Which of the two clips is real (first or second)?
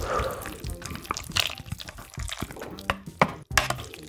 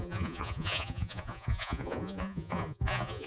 first